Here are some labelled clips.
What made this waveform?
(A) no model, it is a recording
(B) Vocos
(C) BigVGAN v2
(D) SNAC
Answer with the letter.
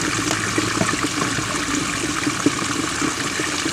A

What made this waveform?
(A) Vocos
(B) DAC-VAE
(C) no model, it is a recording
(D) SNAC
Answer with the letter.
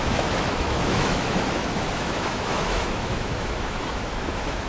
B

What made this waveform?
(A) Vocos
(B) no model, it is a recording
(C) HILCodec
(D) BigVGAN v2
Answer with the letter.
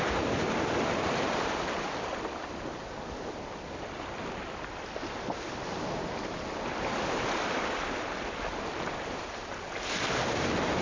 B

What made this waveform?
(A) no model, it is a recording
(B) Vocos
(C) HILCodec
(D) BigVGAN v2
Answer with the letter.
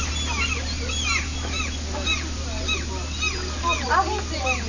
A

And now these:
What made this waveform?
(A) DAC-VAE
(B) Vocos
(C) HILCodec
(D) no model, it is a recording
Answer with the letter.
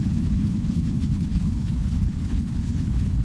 C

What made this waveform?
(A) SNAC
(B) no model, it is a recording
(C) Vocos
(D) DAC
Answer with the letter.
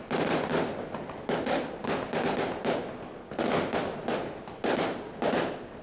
B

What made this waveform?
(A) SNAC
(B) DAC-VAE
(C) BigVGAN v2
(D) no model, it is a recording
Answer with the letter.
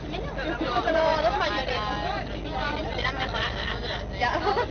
D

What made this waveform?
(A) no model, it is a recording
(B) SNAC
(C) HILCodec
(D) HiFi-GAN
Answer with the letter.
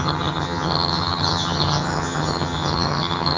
D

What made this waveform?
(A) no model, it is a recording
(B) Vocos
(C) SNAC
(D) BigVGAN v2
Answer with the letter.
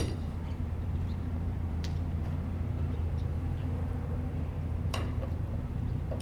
D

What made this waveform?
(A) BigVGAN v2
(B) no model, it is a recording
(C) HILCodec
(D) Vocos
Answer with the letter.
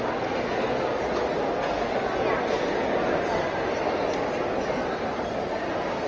B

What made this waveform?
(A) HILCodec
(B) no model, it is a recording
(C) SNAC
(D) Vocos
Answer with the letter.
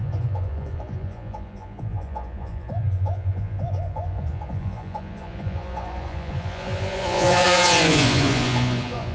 D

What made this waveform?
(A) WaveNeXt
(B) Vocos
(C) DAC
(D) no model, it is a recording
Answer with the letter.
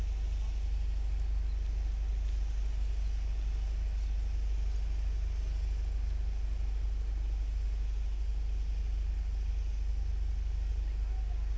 D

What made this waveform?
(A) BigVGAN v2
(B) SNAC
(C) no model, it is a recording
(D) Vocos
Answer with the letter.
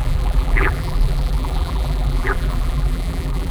A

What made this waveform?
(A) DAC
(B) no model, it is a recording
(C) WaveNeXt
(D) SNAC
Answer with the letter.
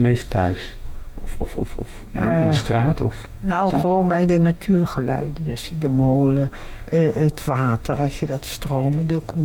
A